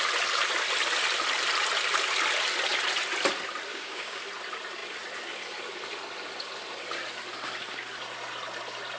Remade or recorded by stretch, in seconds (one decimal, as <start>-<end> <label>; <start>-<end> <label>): 0.0-3.7 recorded; 3.7-4.2 remade; 4.2-9.0 recorded